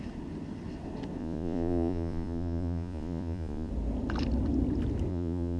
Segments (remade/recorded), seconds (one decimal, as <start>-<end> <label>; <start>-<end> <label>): 0.0-1.2 recorded; 1.2-3.7 remade; 3.7-5.1 recorded; 5.1-5.6 remade